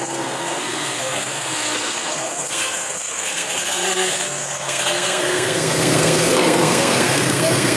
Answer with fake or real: fake